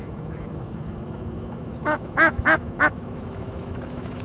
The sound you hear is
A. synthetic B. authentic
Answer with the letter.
A